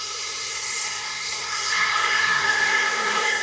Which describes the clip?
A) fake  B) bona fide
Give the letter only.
A